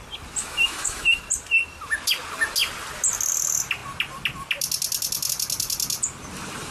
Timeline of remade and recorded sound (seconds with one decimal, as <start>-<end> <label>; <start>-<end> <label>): 0.0-0.4 recorded; 0.4-1.2 remade; 1.2-6.7 recorded